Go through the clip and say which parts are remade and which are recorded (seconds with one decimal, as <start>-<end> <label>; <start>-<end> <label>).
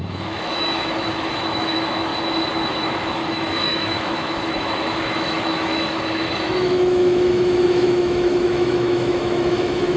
0.0-2.1 remade; 2.1-2.8 recorded; 2.8-10.0 remade